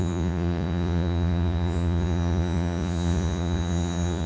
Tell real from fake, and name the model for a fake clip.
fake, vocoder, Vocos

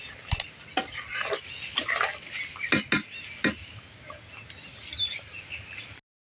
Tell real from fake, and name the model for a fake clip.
real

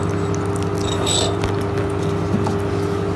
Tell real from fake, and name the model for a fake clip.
real